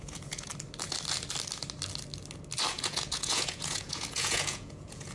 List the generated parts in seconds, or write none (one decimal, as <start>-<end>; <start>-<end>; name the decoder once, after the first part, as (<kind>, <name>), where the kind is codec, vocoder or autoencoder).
0.0-0.5 (vocoder, Vocos); 2.7-5.1